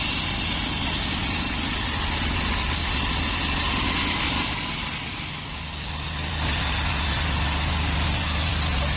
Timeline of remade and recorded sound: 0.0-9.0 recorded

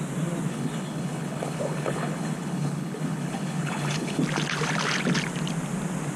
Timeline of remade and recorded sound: 0.0-0.5 recorded; 0.5-4.2 remade; 4.2-6.2 recorded

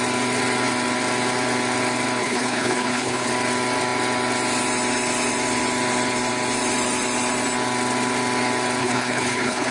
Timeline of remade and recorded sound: 0.0-2.2 recorded; 2.2-3.3 remade; 3.3-8.8 recorded; 8.8-9.7 remade